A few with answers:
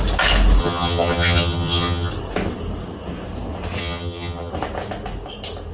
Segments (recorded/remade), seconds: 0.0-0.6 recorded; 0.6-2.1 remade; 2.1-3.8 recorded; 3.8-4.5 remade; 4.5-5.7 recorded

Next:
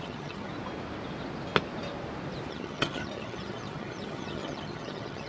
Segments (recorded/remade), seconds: 0.0-0.5 remade; 0.5-2.5 recorded; 2.5-5.3 remade

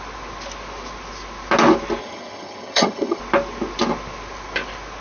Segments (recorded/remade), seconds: 0.0-2.0 recorded; 2.0-3.2 remade; 3.2-5.0 recorded